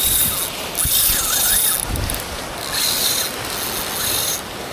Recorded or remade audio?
recorded